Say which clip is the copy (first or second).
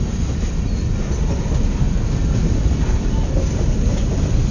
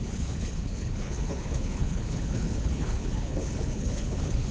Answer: second